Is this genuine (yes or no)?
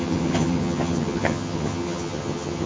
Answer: no